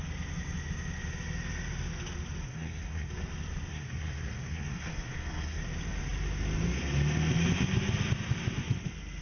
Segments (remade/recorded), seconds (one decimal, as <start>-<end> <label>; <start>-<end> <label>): 0.0-2.4 recorded; 2.4-3.1 remade; 3.1-3.7 recorded; 3.7-5.6 remade; 5.6-9.2 recorded